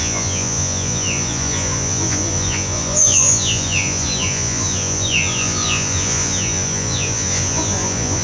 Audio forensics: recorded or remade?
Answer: remade